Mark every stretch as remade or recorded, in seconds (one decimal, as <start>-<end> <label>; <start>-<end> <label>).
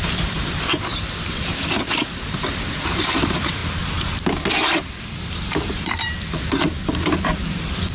0.0-3.6 remade; 3.6-4.5 recorded; 4.5-7.9 remade